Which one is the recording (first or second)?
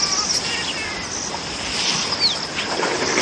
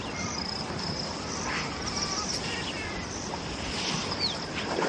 first